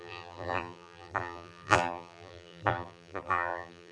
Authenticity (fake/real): fake